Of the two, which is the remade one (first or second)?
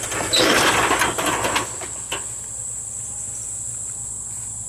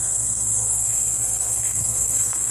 second